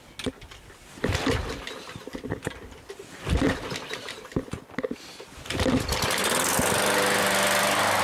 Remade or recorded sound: recorded